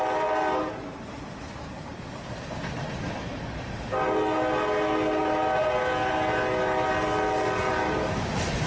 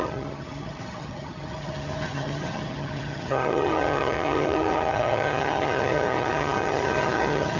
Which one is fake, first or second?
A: second